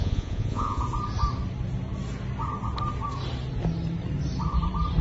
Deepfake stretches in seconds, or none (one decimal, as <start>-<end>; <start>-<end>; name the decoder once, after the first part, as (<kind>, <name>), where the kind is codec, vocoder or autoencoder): 0.0-0.8 (vocoder, Vocos)